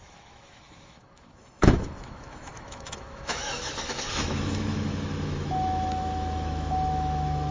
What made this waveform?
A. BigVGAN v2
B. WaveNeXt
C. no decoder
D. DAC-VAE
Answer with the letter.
D